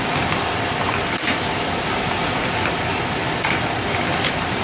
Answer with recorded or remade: recorded